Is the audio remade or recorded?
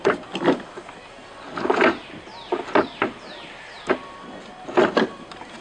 recorded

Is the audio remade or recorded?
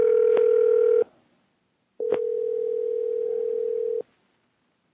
recorded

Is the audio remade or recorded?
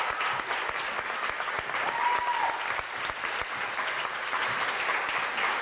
recorded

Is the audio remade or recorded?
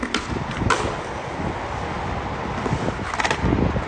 recorded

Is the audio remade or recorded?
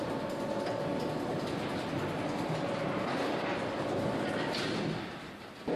recorded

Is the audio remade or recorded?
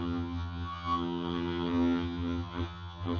remade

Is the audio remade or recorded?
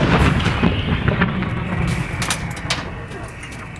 recorded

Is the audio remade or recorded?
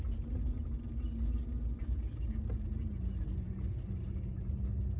recorded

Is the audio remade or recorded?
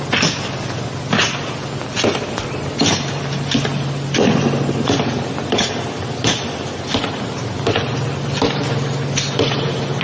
recorded